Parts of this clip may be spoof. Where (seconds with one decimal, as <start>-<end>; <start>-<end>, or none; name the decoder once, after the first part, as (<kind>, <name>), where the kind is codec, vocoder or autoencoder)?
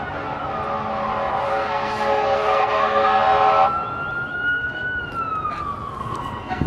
1.5-3.2 (codec, SNAC); 4.3-5.0; 6.0-6.7